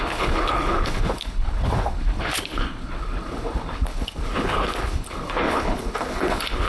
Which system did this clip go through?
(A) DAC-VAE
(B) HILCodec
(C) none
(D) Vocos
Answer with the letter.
B